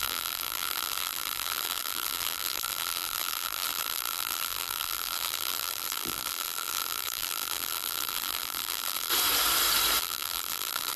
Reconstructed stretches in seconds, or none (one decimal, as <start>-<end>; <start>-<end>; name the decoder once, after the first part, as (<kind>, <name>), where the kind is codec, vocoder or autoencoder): 0.0-9.1 (vocoder, BigVGAN v2); 10.0-11.0

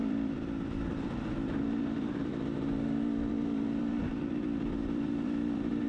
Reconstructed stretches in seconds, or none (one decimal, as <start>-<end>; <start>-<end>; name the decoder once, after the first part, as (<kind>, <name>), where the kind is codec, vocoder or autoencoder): 0.0-2.3 (vocoder, BigVGAN v2); 3.3-5.9

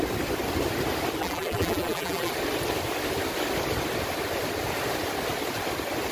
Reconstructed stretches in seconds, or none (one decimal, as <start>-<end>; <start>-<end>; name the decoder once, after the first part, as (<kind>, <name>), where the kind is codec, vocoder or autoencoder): 1.2-2.3 (vocoder, BigVGAN v2)

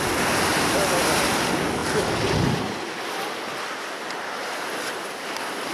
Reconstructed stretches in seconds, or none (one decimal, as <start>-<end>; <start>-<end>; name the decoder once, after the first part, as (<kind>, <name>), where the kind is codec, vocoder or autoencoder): 0.5-1.1 (vocoder, BigVGAN v2)

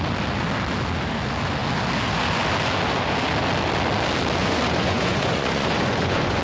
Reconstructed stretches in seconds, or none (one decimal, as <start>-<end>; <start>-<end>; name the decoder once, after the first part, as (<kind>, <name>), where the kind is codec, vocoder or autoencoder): 4.4-6.4 (vocoder, Vocos)